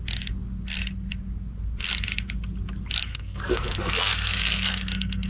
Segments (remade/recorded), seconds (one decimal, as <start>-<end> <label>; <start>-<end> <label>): 0.0-3.1 recorded; 3.1-5.3 remade